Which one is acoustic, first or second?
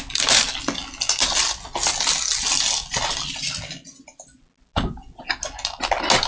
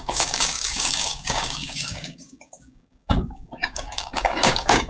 first